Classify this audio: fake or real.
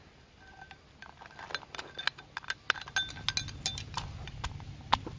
real